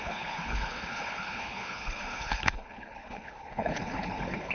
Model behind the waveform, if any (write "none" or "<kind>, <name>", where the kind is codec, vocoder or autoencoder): codec, HILCodec